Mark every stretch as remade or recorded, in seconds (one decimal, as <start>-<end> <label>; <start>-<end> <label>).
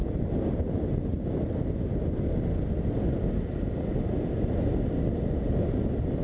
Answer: 0.0-6.2 recorded